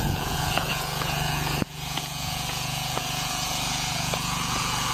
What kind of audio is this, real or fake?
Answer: fake